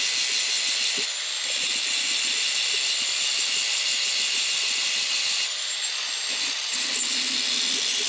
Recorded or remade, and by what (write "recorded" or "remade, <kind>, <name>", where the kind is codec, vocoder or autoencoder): recorded